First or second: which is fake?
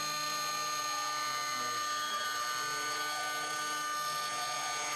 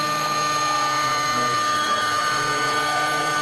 second